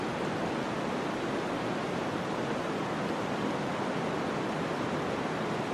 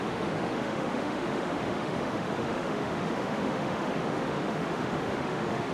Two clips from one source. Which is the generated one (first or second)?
second